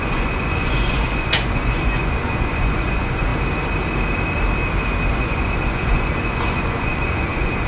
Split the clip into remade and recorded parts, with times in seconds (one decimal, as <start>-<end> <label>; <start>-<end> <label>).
0.0-3.3 remade; 3.3-5.1 recorded; 5.1-7.7 remade

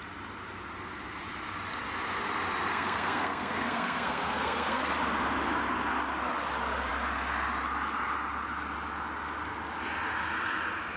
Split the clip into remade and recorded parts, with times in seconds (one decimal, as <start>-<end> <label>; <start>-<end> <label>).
0.0-2.7 recorded; 2.7-4.9 remade; 4.9-11.0 recorded